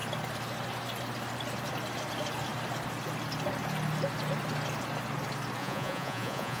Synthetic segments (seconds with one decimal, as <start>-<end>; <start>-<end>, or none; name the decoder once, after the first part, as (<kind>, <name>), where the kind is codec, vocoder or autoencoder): 5.6-6.6 (vocoder, Vocos)